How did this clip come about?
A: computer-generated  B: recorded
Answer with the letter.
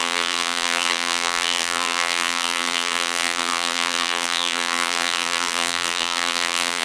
A